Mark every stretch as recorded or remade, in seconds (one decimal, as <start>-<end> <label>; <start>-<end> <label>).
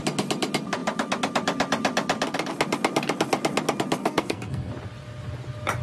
0.0-4.0 recorded; 4.0-4.7 remade; 4.7-5.8 recorded